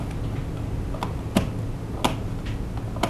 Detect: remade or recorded recorded